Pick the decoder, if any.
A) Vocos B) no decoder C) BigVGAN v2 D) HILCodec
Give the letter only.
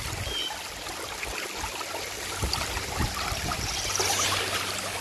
B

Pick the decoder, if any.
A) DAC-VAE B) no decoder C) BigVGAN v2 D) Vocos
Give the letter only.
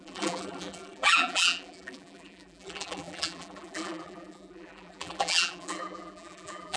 C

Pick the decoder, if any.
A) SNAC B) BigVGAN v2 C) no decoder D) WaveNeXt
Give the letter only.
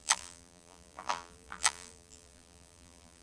B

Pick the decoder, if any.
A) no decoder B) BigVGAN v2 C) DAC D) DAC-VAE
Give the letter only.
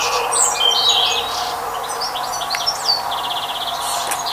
A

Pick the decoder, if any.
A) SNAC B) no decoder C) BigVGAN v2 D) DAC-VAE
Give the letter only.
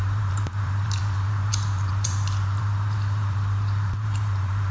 C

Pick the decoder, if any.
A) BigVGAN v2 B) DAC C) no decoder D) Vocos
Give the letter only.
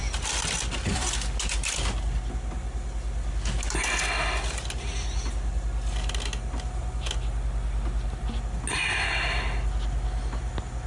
C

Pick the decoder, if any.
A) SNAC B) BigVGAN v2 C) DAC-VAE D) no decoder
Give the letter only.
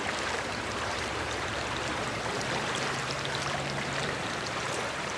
B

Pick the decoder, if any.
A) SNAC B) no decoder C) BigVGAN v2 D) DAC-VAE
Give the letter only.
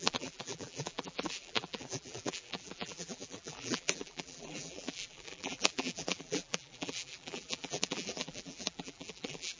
C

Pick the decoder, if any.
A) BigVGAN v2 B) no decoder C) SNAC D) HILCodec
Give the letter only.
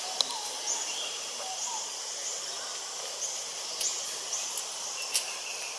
B